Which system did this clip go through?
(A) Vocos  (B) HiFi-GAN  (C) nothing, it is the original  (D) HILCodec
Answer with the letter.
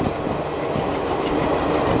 C